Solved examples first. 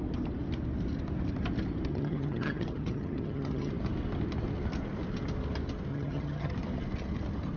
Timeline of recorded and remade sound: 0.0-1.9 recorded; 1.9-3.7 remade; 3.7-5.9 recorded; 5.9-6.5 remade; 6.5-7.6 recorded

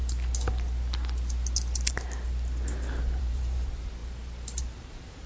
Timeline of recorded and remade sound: 0.0-3.2 recorded; 3.2-4.0 remade; 4.0-4.6 recorded; 4.6-5.3 remade

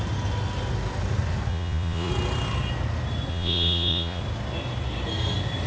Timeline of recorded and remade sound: 0.0-1.5 recorded; 1.5-2.1 remade; 2.1-3.3 recorded; 3.3-4.2 remade; 4.2-5.7 recorded